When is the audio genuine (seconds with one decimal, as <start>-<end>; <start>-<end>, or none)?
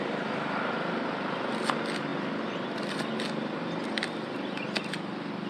0.0-5.5